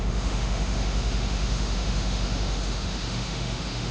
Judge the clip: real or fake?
fake